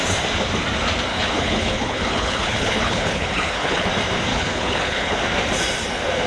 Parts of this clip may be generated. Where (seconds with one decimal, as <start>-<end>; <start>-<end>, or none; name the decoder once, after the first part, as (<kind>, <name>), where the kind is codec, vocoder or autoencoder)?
1.1-3.9 (codec, HILCodec); 4.3-5.2